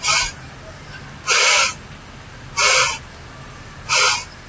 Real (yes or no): yes